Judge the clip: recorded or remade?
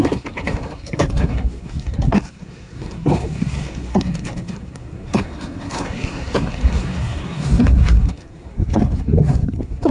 remade